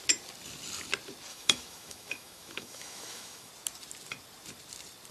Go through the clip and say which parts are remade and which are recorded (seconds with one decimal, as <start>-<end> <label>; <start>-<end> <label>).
0.0-1.3 recorded; 1.3-3.5 remade; 3.5-5.1 recorded